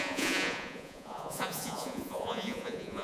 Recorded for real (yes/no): no